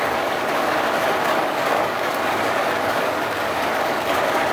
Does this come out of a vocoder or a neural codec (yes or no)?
yes